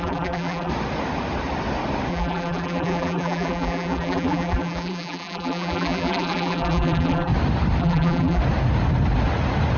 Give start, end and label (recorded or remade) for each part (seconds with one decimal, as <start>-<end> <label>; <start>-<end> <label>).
0.0-0.7 remade; 0.7-2.1 recorded; 2.1-7.3 remade; 7.3-7.8 recorded; 7.8-8.4 remade; 8.4-9.8 recorded